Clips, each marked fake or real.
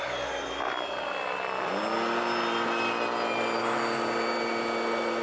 real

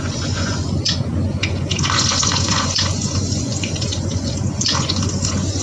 fake